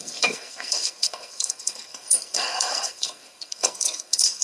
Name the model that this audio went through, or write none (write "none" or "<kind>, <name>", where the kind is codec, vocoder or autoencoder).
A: codec, SNAC